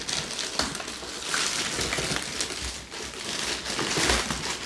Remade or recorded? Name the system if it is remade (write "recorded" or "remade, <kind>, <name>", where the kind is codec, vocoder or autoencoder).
recorded